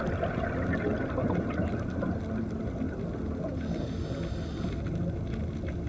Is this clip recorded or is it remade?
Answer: recorded